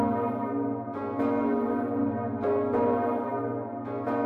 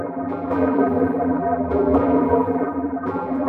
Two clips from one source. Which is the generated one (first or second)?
second